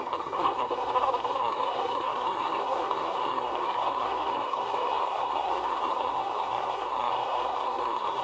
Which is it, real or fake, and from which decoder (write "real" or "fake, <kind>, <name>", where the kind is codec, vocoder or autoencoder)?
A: fake, codec, SNAC